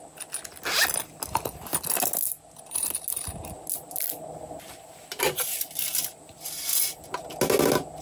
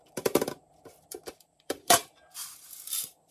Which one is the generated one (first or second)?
second